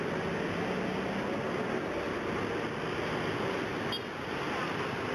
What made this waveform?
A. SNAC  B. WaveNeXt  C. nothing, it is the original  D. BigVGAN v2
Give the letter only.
C